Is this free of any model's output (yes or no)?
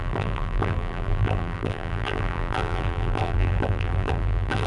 no